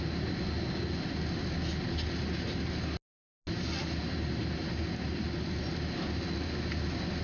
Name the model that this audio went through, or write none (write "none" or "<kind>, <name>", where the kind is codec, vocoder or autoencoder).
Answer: none